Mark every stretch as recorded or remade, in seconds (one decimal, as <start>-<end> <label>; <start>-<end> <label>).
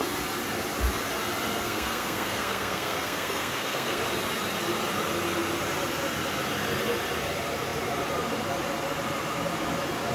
0.0-1.5 recorded; 1.5-4.0 remade; 4.0-10.1 recorded